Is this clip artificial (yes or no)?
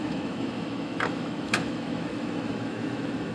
yes